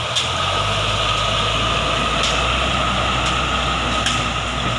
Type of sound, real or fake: real